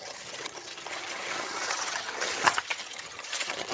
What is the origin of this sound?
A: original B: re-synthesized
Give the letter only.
B